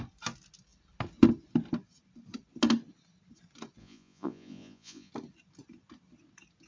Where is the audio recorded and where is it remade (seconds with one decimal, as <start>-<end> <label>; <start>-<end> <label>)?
0.0-3.8 recorded; 3.8-5.1 remade; 5.1-6.7 recorded